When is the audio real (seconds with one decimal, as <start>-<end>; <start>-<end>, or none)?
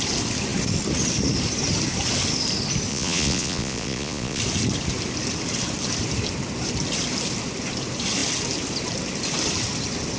0.0-2.9; 4.4-10.2